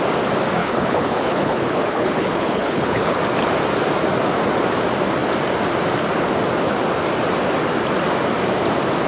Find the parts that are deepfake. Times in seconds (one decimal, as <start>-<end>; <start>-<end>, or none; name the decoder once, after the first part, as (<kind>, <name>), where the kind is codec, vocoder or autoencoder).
0.6-3.2 (codec, HILCodec)